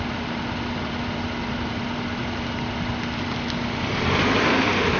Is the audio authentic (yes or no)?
yes